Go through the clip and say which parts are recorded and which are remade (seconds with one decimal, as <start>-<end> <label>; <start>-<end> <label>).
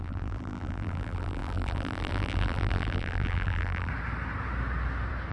0.0-3.9 remade; 3.9-5.3 recorded